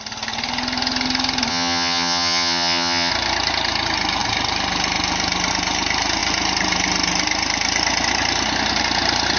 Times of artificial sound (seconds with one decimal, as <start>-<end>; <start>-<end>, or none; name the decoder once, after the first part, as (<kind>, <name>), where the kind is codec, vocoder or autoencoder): 1.5-3.1 (vocoder, HiFi-GAN)